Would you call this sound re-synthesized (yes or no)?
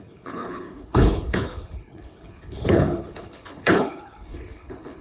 yes